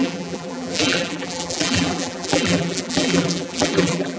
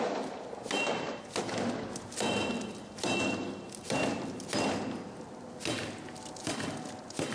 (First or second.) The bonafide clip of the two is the second